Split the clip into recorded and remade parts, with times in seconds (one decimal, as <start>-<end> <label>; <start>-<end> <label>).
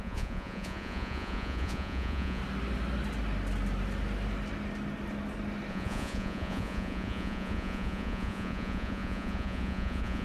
0.0-2.4 remade; 2.4-5.7 recorded; 5.7-10.2 remade